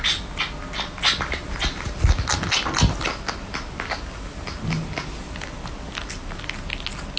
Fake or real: real